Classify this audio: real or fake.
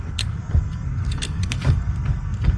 fake